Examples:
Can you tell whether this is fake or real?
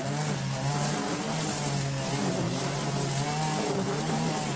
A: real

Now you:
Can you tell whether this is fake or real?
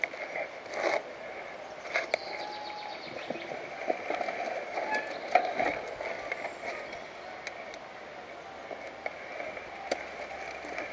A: real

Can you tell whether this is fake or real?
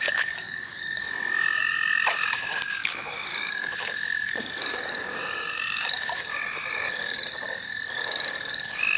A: fake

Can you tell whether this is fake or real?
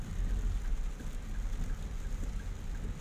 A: real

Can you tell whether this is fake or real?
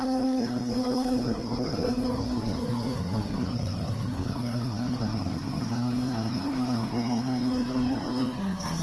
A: fake